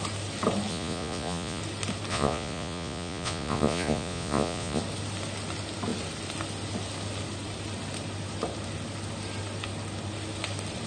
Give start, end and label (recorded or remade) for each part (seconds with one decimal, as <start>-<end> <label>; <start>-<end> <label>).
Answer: 0.0-0.7 recorded; 0.7-1.6 remade; 1.6-2.1 recorded; 2.1-4.8 remade; 4.8-10.9 recorded